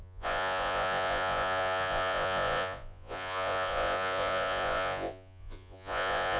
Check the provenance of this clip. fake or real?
fake